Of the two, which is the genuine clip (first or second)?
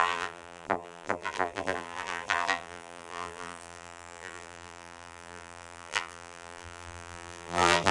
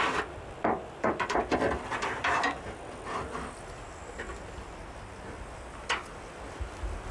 second